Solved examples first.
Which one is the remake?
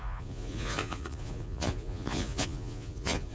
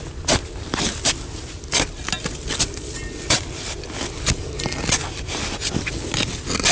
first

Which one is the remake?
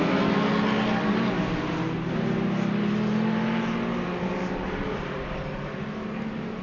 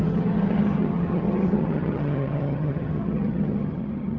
second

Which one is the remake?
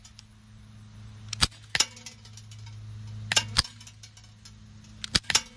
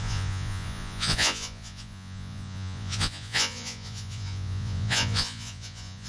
second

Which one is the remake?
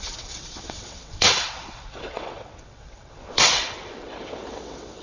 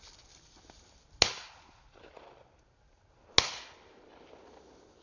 first